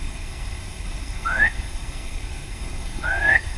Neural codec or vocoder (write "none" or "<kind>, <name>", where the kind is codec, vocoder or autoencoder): codec, SNAC